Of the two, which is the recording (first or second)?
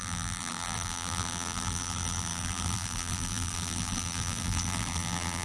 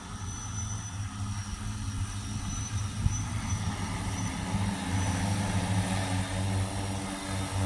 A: second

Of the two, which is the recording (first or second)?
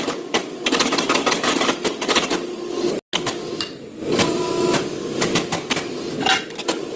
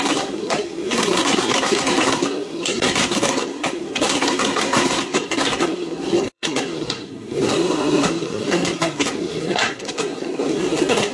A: first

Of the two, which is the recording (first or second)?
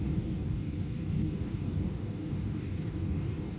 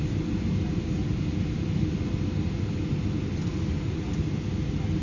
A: second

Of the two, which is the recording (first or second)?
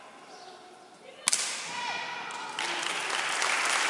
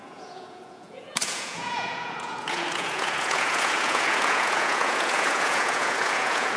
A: first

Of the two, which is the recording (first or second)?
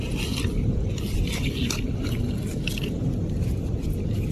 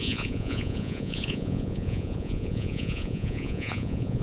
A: first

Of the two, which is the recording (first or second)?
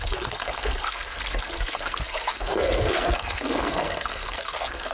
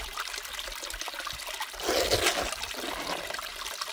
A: second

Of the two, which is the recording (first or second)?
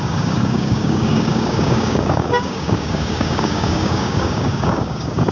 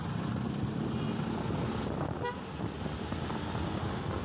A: second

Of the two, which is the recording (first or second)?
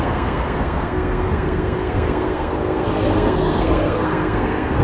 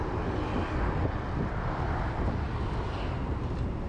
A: second